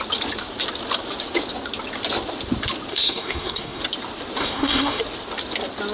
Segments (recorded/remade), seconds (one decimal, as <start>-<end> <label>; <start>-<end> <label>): 0.0-2.9 recorded; 2.9-3.8 remade; 3.8-4.4 recorded; 4.4-5.0 remade; 5.0-5.9 recorded